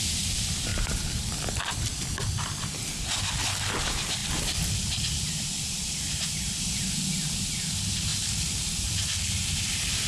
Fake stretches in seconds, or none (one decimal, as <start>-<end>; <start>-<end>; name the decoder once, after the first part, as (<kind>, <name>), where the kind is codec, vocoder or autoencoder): 0.7-2.0 (vocoder, BigVGAN v2); 8.1-9.3